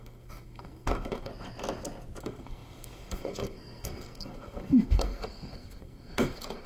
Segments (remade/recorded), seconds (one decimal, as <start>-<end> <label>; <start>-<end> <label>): 0.0-1.3 remade; 1.3-2.2 recorded; 2.2-6.7 remade